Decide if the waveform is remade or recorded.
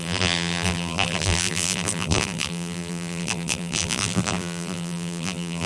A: remade